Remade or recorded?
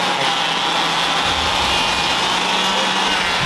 recorded